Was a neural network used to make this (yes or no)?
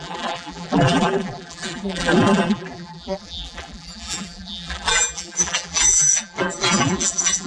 yes